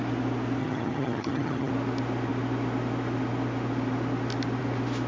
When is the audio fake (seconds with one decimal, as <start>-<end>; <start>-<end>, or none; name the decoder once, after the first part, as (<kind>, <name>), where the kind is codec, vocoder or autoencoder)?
0.6-1.7 (vocoder, HiFi-GAN)